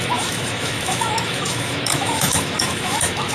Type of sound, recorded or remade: remade